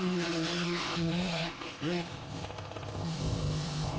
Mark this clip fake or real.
fake